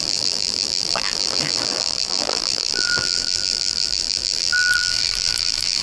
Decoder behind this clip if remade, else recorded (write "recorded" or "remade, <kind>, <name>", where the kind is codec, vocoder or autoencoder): remade, vocoder, BigVGAN v2